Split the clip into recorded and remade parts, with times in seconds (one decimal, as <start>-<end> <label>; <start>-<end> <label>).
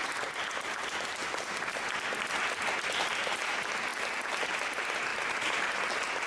0.0-5.1 recorded; 5.1-5.8 remade; 5.8-6.3 recorded